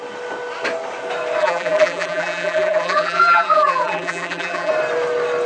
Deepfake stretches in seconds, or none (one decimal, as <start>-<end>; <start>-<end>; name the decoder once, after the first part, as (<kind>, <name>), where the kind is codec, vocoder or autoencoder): 1.4-4.7 (vocoder, BigVGAN v2)